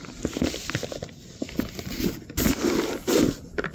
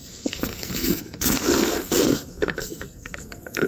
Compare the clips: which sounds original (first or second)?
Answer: first